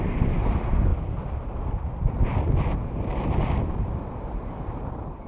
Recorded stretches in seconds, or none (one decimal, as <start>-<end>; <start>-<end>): 0.0-5.3